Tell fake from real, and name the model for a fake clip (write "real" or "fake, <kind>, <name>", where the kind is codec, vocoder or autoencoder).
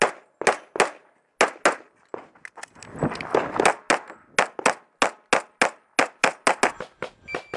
real